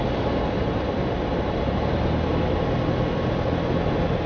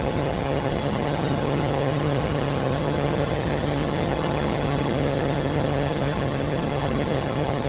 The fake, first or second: second